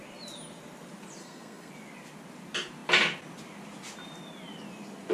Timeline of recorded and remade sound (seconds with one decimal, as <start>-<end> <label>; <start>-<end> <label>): 0.0-1.2 recorded; 1.2-1.7 remade; 1.7-5.1 recorded